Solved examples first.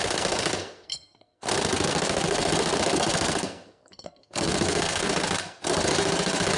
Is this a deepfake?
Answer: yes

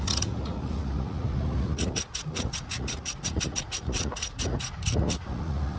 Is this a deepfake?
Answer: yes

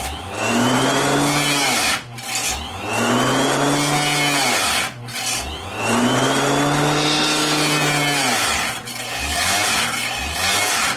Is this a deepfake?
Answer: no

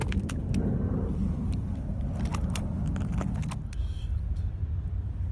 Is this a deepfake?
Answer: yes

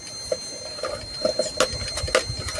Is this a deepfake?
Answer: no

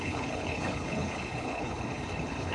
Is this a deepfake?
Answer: yes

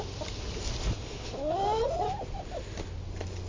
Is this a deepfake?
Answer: no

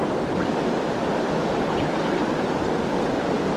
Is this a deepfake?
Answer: no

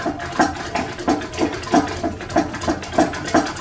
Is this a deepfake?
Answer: no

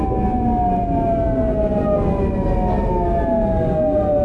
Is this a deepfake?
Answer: no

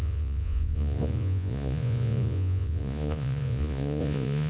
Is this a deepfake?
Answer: yes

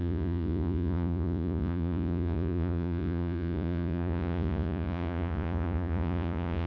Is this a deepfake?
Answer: yes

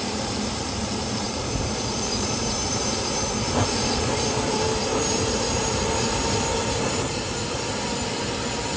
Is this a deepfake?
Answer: yes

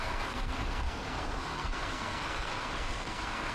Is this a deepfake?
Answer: yes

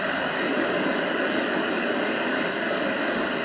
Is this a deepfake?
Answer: yes